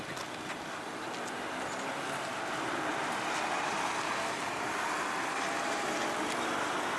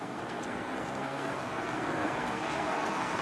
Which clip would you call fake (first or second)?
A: second